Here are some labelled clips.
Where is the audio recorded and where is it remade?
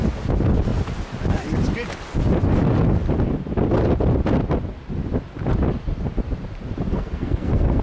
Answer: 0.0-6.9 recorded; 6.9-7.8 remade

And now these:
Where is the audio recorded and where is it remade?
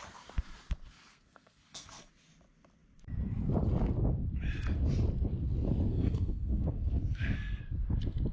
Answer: 0.0-1.1 recorded; 1.1-2.1 remade; 2.1-5.9 recorded; 5.9-7.6 remade; 7.6-8.3 recorded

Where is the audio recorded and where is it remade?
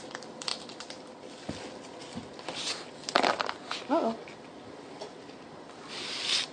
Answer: 0.0-6.5 recorded